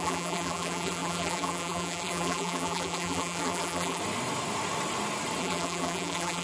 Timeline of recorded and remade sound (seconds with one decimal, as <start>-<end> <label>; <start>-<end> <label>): 0.0-4.0 remade; 4.0-5.4 recorded; 5.4-6.4 remade